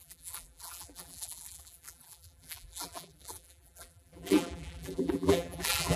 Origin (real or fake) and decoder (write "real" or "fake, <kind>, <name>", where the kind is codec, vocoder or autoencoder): fake, vocoder, BigVGAN v2